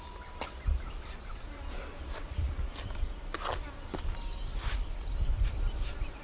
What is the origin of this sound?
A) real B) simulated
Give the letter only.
A